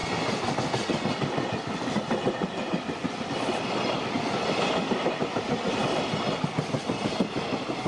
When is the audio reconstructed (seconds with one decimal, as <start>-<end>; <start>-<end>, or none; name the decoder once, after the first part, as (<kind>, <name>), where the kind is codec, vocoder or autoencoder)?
3.3-5.8 (vocoder, BigVGAN v2); 6.5-7.9

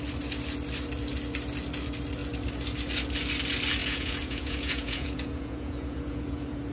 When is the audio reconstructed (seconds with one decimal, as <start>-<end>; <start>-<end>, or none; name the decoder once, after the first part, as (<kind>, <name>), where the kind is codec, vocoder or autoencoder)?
3.8-6.7 (vocoder, Vocos)

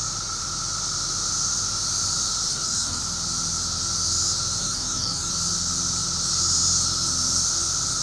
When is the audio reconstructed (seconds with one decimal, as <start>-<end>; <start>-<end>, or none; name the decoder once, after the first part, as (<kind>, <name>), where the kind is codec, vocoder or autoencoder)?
2.5-3.0 (codec, DAC); 4.6-5.3

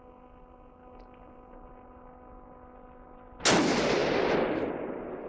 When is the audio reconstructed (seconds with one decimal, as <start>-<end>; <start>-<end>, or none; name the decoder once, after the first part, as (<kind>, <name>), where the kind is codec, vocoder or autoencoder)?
none